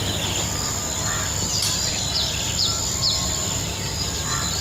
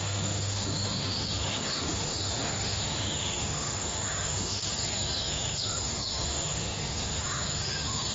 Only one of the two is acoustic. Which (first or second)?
first